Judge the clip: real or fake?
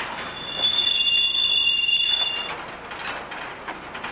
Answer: real